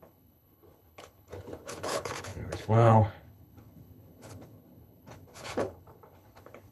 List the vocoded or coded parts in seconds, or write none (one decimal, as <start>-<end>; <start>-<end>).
0.0-6.7